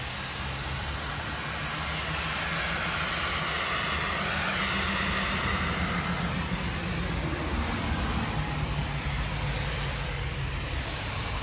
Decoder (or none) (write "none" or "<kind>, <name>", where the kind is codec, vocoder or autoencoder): none